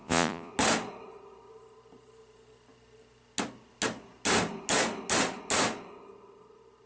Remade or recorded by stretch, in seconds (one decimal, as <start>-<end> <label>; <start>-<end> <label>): 0.0-0.5 remade; 0.5-6.9 recorded